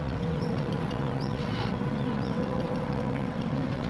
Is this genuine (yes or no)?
no